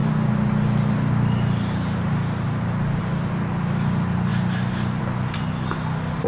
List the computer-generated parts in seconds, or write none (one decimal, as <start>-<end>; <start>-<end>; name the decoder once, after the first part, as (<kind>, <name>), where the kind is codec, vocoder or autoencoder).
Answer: none